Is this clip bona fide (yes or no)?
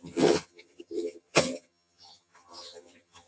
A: no